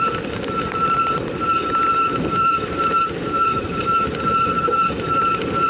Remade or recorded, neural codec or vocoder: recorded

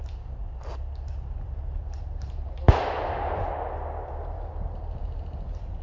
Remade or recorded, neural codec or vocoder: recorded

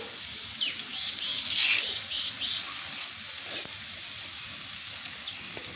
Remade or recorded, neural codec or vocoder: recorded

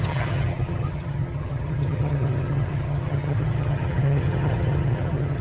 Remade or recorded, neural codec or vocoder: remade, vocoder, HiFi-GAN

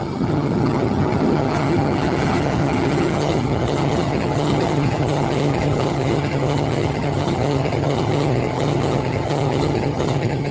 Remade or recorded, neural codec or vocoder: remade, vocoder, HiFi-GAN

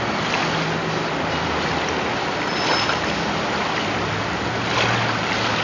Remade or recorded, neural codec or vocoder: recorded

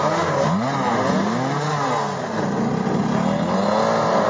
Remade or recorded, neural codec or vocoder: recorded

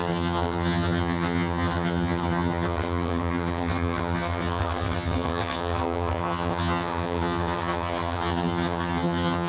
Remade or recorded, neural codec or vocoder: remade, vocoder, HiFi-GAN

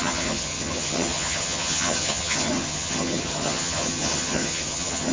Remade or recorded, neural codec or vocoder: remade, vocoder, HiFi-GAN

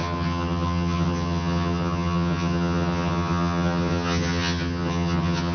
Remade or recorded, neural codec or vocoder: remade, vocoder, HiFi-GAN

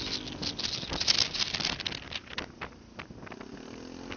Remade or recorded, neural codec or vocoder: recorded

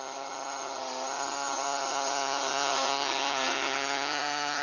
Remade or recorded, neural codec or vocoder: remade, vocoder, HiFi-GAN